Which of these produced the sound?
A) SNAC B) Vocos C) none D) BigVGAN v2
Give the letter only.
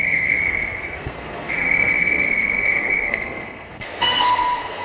A